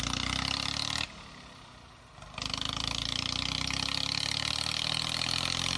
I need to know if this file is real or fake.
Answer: real